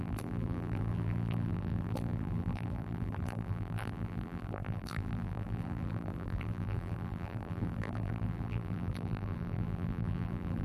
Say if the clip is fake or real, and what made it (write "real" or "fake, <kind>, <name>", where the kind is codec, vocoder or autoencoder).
fake, vocoder, BigVGAN v2